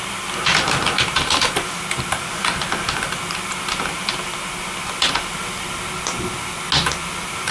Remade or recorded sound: recorded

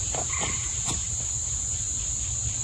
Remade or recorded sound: remade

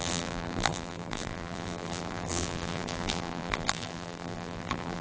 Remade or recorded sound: remade